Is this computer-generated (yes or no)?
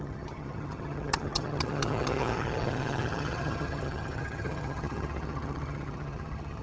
yes